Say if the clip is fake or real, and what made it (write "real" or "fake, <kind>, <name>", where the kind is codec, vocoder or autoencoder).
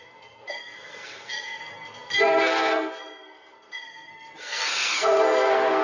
fake, codec, SNAC